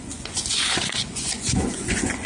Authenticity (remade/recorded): remade